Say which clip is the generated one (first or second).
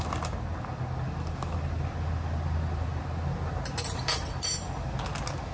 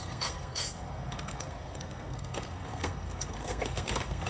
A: second